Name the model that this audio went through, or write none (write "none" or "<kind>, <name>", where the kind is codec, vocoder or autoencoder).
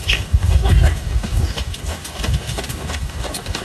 codec, DAC